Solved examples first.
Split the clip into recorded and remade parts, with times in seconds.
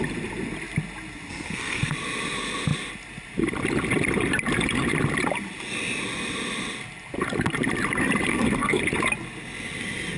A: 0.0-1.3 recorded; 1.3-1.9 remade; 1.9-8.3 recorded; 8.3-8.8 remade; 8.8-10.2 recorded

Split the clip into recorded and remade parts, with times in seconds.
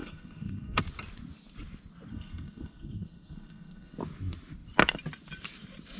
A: 0.0-0.8 remade; 0.8-2.1 recorded; 2.1-4.0 remade; 4.0-6.0 recorded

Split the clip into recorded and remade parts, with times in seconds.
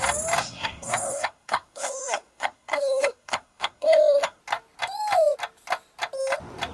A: 0.0-0.4 recorded; 0.4-4.4 remade; 4.4-6.7 recorded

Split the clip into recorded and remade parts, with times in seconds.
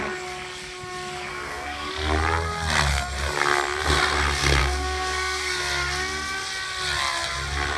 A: 0.0-1.3 recorded; 1.3-1.9 remade; 1.9-4.6 recorded; 4.6-5.6 remade; 5.6-7.8 recorded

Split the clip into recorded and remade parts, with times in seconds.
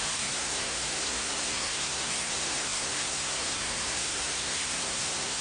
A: 0.0-5.4 remade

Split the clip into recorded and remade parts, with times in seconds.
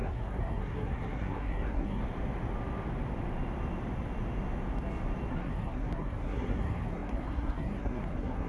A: 0.0-2.0 remade; 2.0-5.3 recorded; 5.3-8.5 remade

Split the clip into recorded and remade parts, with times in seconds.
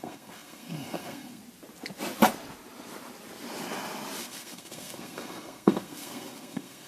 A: 0.0-1.4 remade; 1.4-4.2 recorded; 4.2-6.9 remade